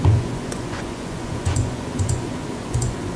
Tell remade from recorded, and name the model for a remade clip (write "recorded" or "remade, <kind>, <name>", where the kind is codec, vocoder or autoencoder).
remade, vocoder, Vocos